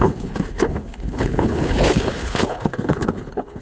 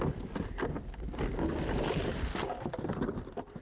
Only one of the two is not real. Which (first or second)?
first